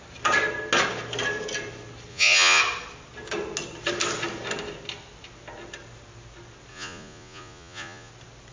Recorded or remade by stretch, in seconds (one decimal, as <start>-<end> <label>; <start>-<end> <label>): 0.0-2.1 recorded; 2.1-2.6 remade; 2.6-6.7 recorded; 6.7-8.1 remade; 8.1-8.5 recorded